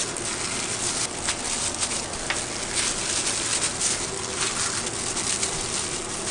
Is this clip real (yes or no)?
yes